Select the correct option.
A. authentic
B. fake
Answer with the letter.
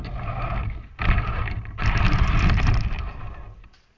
A